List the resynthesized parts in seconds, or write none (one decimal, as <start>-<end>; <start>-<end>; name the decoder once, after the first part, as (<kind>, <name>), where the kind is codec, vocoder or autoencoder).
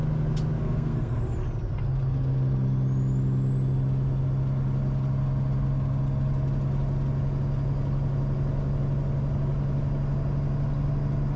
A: 0.6-1.2 (codec, SNAC)